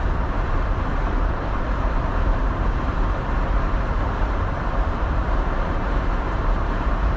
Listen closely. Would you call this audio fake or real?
fake